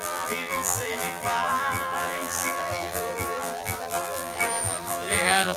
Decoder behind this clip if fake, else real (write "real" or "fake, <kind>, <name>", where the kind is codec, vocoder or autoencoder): fake, vocoder, BigVGAN v2